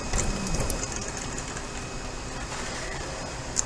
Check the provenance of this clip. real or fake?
fake